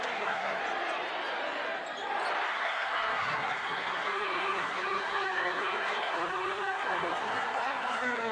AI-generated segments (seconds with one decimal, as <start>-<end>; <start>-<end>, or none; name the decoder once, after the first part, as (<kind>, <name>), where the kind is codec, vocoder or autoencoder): 0.0-0.6 (codec, SNAC); 2.5-8.3